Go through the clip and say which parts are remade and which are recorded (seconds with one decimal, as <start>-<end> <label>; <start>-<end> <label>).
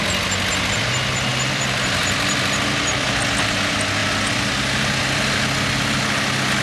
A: 0.0-1.3 recorded; 1.3-3.4 remade; 3.4-6.6 recorded